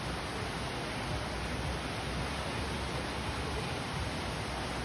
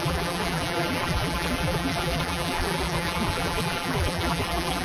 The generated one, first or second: second